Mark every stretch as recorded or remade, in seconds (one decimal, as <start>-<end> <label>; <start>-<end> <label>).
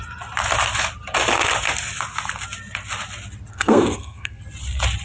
0.0-3.5 recorded; 3.5-4.4 remade; 4.4-5.0 recorded